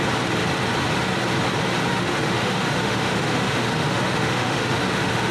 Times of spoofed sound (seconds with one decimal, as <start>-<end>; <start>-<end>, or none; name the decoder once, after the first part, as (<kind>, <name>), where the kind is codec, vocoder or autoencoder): 1.9-5.3 (autoencoder, DAC-VAE)